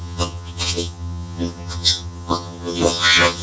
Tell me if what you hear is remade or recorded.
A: remade